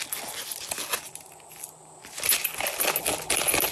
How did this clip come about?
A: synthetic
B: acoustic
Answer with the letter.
B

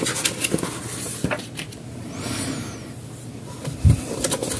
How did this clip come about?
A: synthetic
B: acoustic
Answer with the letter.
B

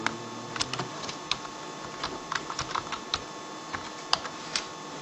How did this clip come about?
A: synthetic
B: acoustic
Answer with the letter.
B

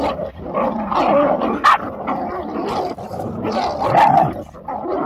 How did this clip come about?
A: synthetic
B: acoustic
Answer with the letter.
B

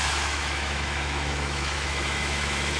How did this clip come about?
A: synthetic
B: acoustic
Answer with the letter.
A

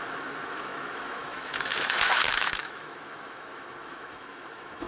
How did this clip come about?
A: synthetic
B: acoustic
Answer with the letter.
A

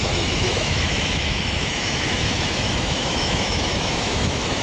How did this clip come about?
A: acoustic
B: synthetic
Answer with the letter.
B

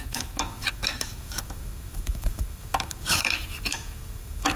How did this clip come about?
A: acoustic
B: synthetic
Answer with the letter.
B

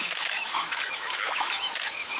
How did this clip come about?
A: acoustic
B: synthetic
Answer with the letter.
B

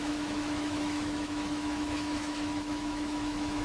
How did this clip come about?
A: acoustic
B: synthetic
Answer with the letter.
B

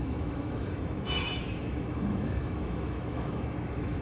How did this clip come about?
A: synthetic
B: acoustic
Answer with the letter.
A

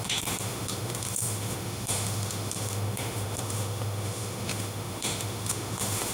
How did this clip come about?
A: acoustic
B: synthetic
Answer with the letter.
B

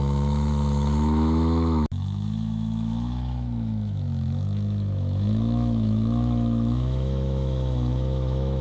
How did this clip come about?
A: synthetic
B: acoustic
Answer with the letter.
A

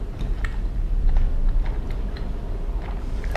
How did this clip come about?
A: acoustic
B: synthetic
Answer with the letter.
A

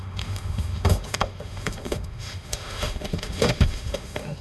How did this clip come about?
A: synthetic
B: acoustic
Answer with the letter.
A